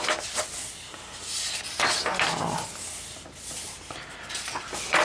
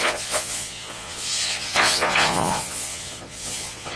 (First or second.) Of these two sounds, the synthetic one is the second